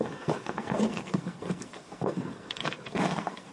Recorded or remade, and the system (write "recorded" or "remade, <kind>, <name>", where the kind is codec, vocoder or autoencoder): remade, codec, SNAC